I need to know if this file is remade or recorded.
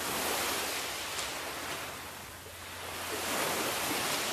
recorded